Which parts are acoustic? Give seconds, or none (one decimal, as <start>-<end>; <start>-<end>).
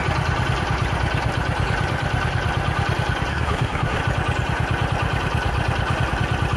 0.0-3.3; 4.0-6.6